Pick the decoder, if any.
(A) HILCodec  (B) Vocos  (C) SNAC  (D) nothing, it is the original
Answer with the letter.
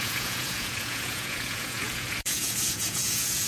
B